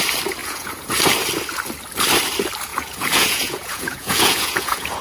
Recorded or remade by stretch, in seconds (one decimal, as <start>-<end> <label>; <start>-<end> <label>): 0.0-0.4 recorded; 0.4-0.9 remade; 0.9-2.7 recorded; 2.7-5.0 remade